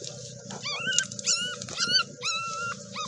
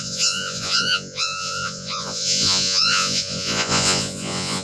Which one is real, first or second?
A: first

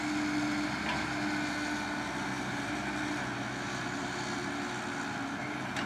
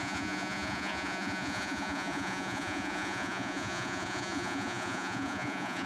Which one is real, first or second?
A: first